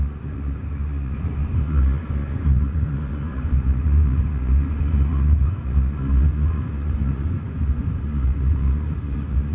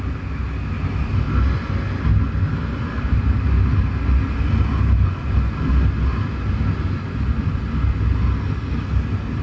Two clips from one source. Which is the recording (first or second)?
second